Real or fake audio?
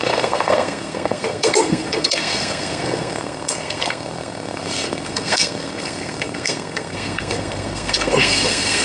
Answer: fake